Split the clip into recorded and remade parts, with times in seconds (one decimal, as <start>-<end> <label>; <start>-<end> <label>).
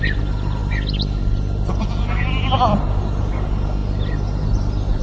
0.0-5.0 recorded